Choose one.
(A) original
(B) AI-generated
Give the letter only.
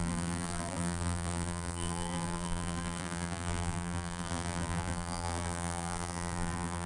B